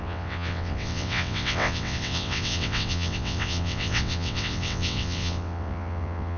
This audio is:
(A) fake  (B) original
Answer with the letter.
A